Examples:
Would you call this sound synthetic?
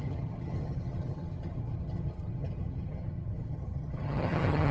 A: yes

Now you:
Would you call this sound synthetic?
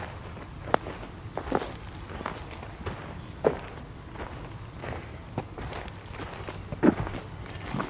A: no